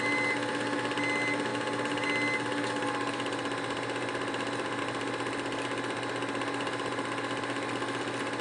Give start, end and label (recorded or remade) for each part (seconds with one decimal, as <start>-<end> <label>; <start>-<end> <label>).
0.0-8.4 recorded